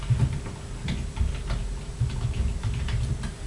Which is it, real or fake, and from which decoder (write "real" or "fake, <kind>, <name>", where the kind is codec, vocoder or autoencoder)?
real